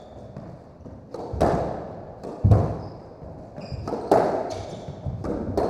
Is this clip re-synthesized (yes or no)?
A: no